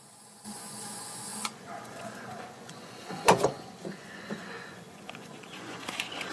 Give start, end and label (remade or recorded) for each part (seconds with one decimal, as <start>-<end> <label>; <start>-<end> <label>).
0.0-6.3 remade